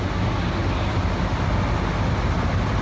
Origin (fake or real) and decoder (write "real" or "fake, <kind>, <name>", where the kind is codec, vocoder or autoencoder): real